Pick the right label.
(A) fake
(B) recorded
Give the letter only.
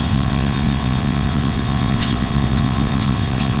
A